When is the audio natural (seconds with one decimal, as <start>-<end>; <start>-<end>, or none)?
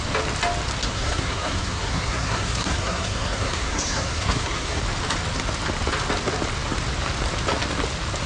0.0-0.8; 4.8-8.3